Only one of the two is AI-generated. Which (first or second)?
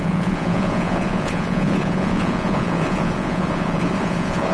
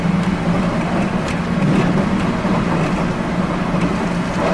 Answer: first